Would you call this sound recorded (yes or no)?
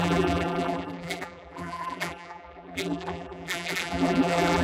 no